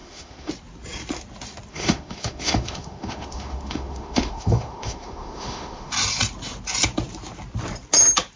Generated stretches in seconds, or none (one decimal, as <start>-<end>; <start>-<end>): 0.0-0.5; 1.7-5.9